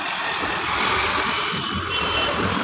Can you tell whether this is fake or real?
fake